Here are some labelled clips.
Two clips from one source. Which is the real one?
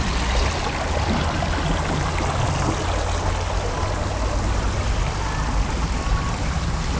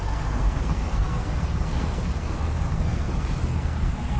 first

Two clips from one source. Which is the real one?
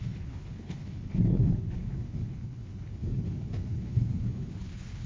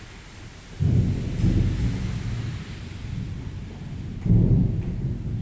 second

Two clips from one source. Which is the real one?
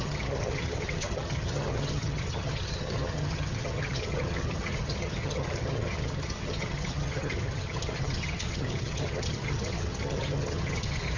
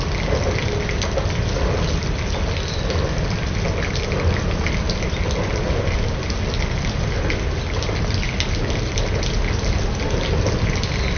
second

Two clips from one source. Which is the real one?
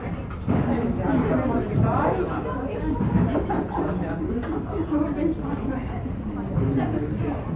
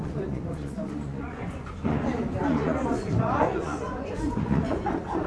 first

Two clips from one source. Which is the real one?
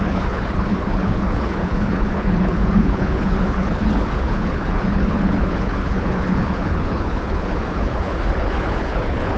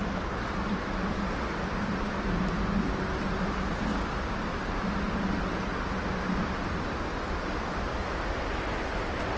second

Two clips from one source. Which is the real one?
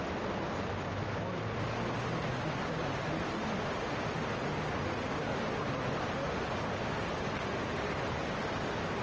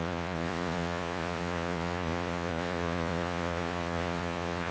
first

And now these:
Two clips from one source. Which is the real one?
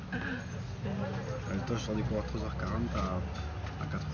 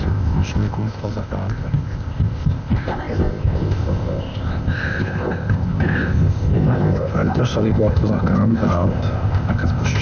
first